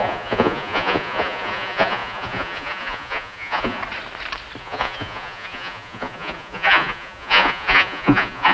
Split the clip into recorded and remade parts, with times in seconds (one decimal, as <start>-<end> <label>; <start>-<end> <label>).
0.0-3.8 remade; 3.8-4.6 recorded; 4.6-8.5 remade